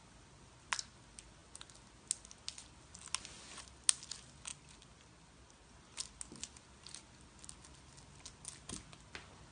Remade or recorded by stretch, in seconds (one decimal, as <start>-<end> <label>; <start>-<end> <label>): 0.0-9.5 recorded